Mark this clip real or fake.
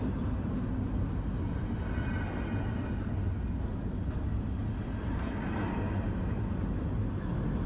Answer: real